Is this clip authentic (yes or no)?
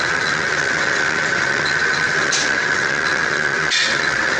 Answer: no